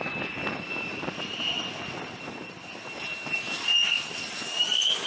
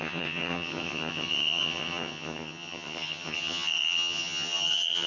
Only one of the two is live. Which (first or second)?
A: first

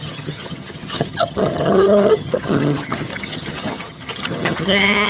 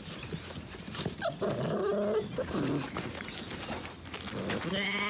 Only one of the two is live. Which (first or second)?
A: second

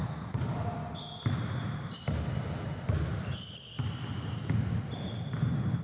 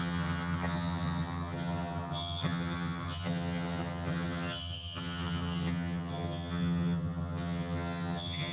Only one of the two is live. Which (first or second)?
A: first